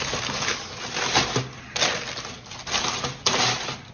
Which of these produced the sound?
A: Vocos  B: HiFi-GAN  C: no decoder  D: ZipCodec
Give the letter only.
C